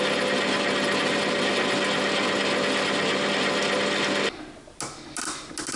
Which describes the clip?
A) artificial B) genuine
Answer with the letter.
B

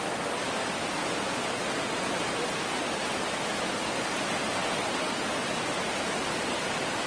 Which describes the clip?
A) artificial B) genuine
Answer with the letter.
B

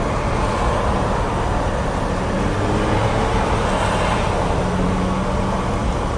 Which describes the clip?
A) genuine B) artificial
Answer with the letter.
A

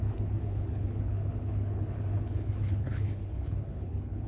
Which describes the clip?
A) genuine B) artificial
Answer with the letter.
B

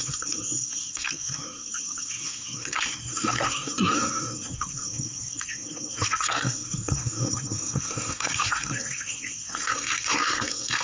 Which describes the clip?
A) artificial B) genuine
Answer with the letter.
A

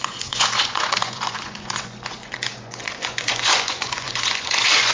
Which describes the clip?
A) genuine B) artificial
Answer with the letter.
B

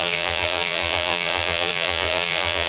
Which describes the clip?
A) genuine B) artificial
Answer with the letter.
B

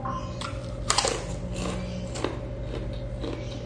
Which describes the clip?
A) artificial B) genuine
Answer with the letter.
B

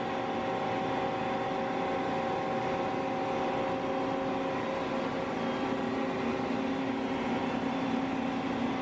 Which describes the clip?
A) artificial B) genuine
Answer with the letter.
B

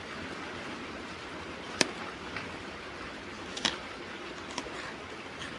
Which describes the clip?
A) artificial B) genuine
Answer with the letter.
A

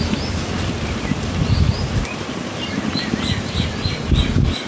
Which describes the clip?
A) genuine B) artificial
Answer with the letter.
A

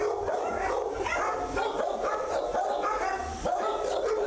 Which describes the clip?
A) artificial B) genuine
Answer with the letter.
B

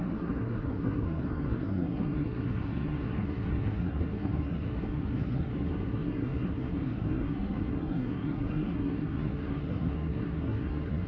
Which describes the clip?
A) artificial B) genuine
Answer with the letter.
A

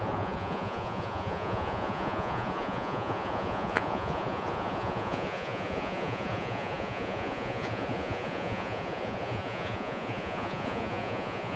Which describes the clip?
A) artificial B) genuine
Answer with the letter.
A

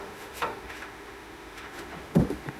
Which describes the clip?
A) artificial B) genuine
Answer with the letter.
A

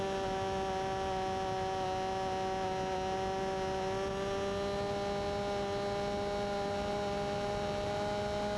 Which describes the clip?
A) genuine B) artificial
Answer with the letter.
A